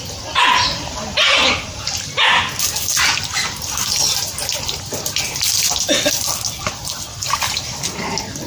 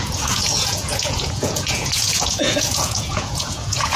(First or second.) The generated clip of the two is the second